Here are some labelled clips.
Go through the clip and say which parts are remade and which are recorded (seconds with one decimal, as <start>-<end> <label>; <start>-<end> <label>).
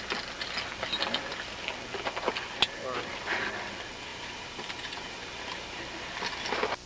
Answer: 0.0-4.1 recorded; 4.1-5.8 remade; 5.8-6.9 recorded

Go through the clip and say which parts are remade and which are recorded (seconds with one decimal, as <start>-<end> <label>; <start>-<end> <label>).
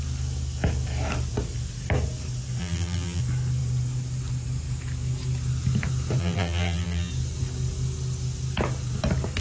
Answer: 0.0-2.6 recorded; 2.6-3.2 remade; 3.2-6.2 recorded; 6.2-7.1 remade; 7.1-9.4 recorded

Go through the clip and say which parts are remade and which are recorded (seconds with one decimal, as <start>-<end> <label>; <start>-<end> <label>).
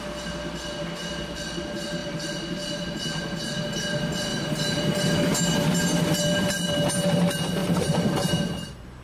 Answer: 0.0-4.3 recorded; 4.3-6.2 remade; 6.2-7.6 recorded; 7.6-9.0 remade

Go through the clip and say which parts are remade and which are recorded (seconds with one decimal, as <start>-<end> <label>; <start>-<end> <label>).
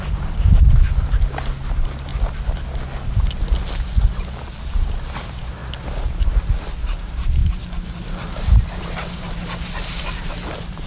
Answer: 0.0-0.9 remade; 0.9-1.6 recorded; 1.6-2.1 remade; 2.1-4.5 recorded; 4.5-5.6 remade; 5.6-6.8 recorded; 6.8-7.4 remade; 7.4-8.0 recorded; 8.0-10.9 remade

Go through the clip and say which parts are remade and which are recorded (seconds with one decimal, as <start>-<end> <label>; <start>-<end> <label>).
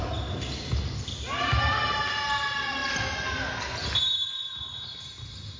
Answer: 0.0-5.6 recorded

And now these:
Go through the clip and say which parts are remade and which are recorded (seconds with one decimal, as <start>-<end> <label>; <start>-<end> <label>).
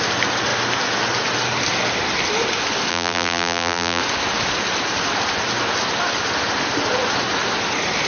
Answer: 0.0-2.9 recorded; 2.9-4.0 remade; 4.0-8.1 recorded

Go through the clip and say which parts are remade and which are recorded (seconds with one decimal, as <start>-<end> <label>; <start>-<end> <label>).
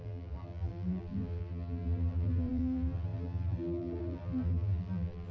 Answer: 0.0-5.3 remade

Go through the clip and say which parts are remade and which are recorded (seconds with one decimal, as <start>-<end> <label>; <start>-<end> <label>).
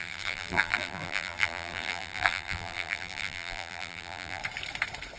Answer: 0.0-4.4 remade; 4.4-5.2 recorded